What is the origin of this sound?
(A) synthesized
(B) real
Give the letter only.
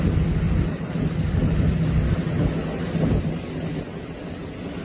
B